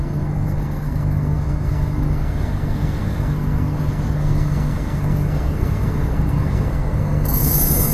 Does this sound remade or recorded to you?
remade